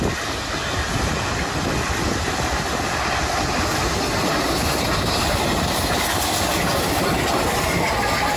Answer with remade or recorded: recorded